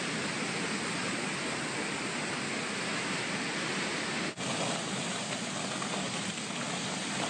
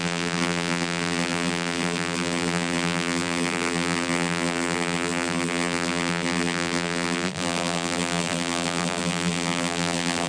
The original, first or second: first